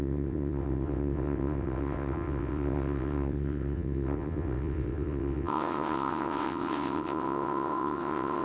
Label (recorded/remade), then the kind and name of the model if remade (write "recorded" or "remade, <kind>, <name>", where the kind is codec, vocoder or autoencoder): remade, vocoder, WaveNeXt